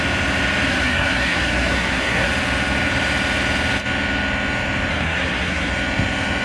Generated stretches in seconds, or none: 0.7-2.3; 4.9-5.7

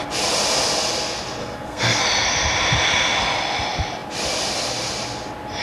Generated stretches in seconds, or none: 1.4-2.0

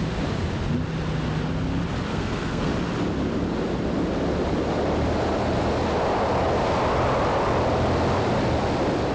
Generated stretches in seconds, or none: 2.1-2.7

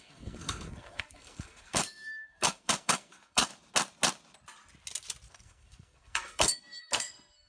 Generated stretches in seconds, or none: 0.0-3.5; 5.3-7.5

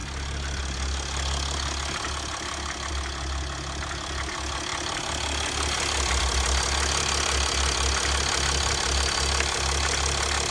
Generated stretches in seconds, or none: none

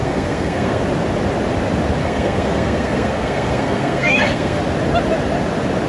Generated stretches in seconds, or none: 0.0-0.8; 2.0-4.6

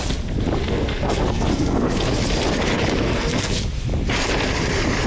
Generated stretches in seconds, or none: 0.6-2.1; 3.0-3.6